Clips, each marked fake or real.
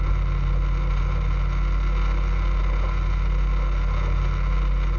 real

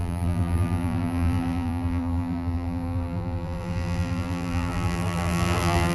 fake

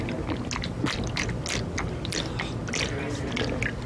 real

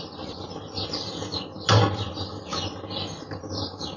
real